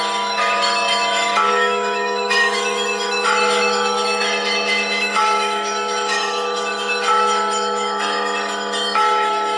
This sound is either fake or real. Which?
fake